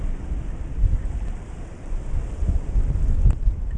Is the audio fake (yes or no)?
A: yes